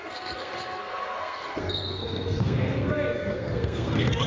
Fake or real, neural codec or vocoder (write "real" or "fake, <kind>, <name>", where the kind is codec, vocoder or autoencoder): fake, codec, SNAC